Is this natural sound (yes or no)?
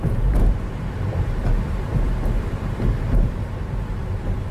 no